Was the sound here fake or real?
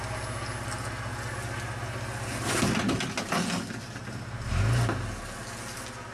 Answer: real